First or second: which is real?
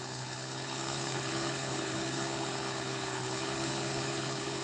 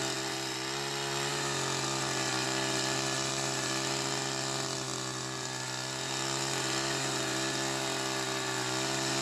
second